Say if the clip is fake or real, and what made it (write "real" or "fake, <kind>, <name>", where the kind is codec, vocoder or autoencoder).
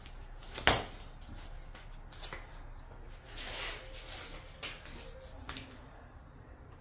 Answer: real